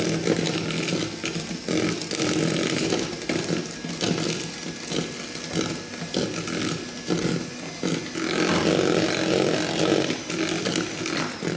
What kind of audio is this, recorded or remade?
recorded